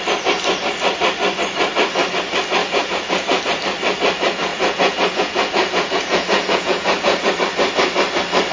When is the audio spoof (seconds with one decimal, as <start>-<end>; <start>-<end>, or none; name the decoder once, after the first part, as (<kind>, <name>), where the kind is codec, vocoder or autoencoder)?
2.6-3.4 (vocoder, Vocos); 4.5-7.3